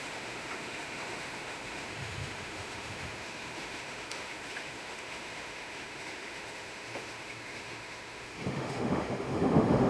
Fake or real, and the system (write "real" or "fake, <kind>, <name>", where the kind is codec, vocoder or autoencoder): fake, autoencoder, DAC-VAE